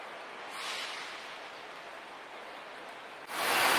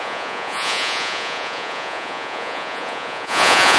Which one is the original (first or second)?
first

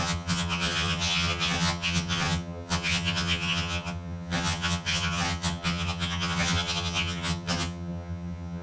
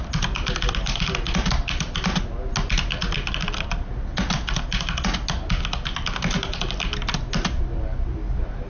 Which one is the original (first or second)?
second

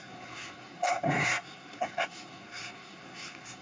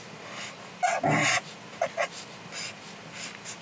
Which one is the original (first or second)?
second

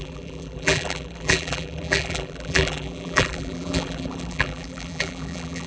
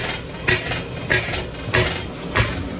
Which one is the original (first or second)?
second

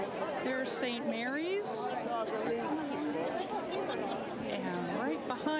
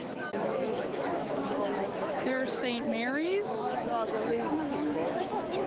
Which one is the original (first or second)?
first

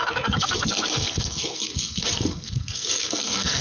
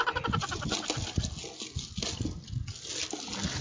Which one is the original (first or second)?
second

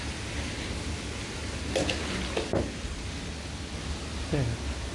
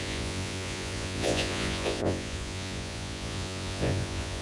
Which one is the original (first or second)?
first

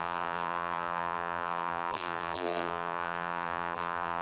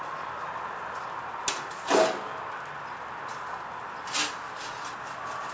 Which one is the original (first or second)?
second